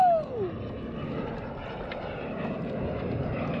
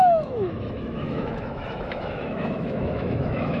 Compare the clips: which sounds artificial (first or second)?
second